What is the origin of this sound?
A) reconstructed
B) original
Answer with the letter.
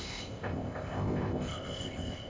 A